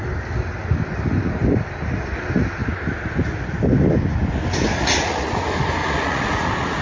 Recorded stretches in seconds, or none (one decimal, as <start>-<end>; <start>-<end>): 0.0-4.7; 5.3-5.8